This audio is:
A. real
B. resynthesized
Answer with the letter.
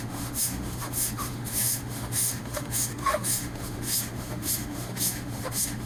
B